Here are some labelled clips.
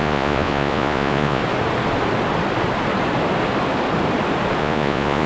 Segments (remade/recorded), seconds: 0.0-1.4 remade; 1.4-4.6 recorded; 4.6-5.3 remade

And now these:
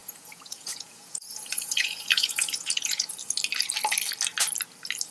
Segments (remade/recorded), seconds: 0.0-3.1 remade; 3.1-5.1 recorded

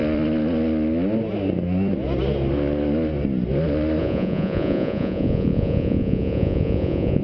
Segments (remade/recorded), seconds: 0.0-4.0 recorded; 4.0-7.2 remade

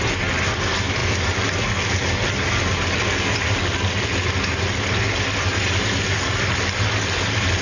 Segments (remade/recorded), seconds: 0.0-7.6 recorded